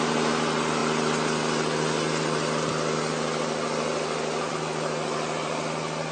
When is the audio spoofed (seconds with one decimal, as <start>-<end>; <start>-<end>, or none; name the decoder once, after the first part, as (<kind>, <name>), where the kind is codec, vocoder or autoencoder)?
none